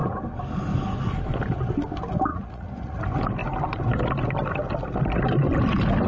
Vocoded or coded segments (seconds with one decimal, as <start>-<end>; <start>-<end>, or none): 2.3-3.0

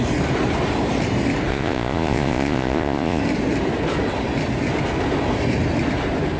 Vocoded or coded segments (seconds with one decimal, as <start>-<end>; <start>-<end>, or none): 1.5-3.2

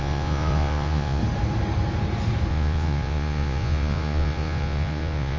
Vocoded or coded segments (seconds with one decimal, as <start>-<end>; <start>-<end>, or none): 0.0-1.2; 2.5-5.4

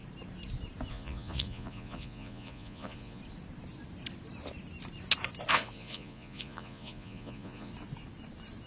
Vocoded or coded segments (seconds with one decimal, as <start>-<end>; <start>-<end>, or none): 0.9-3.2; 5.5-7.7

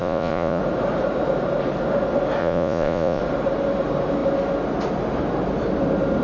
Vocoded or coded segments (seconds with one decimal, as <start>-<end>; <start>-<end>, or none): 0.0-0.6; 2.4-3.2